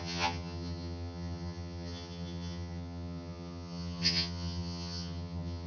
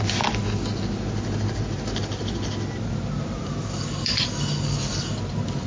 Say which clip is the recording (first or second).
second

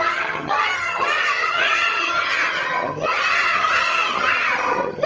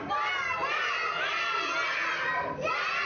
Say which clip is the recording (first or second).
second